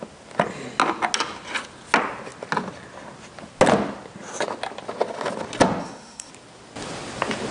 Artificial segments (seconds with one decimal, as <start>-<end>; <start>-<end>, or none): 5.8-6.3

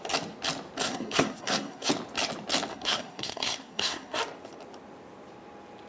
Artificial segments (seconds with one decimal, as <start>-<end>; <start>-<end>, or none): 0.8-1.9; 2.7-4.2

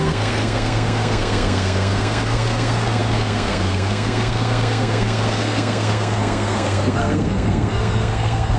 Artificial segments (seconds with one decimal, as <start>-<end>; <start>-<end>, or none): 0.0-8.6

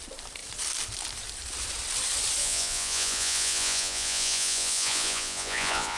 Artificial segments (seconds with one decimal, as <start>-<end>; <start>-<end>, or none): 2.4-6.0

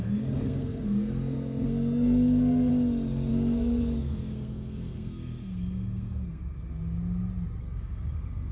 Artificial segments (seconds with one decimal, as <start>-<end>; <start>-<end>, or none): 0.0-2.7; 3.3-6.4; 7.6-8.5

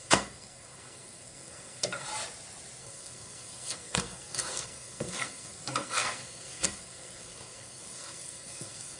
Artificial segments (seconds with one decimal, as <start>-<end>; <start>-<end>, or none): 0.0-2.1; 2.8-9.0

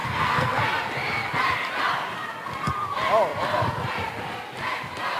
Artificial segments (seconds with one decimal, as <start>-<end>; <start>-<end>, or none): 0.0-0.6

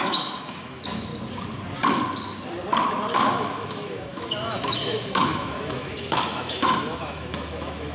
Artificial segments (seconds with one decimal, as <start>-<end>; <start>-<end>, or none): 0.0-1.1; 2.9-7.9